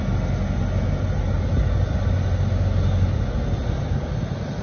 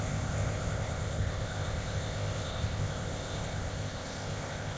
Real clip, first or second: first